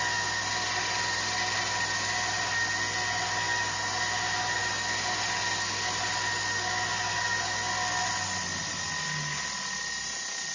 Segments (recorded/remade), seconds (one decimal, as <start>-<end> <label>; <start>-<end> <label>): 0.0-10.5 recorded